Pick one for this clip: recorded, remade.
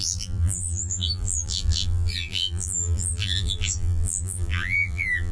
remade